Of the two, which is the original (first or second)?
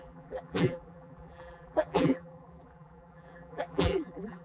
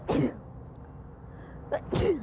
second